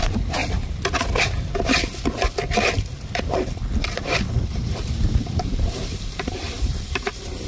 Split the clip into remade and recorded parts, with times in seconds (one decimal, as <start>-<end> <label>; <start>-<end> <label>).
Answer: 0.0-0.4 remade; 0.4-4.4 recorded; 4.4-7.5 remade